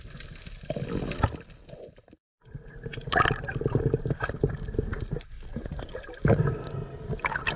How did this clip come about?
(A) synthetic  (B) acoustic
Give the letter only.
B